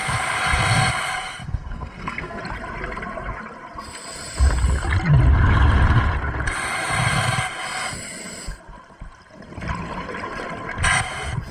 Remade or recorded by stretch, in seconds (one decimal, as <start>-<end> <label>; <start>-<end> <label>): 0.0-1.4 recorded; 1.4-2.4 remade; 2.4-11.5 recorded